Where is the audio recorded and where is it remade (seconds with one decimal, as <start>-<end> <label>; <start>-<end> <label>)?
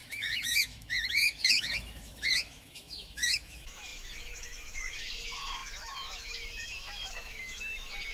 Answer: 0.0-8.1 remade